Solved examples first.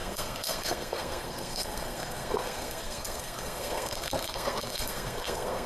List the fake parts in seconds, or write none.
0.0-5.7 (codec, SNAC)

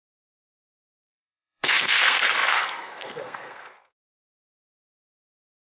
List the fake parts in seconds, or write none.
0.0-5.8 (codec, SNAC)

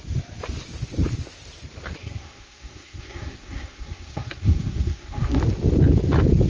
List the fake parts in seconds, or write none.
2.0-5.4 (codec, SNAC)

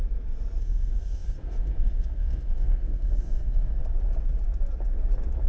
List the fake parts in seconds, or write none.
0.6-3.8 (codec, SNAC)